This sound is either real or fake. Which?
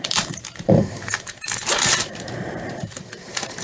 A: fake